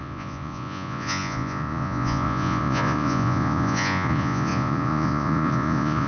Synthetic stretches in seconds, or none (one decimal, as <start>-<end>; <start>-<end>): 0.0-6.1